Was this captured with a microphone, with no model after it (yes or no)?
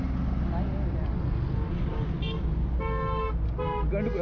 yes